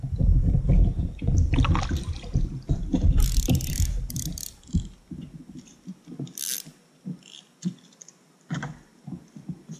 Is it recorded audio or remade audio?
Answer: recorded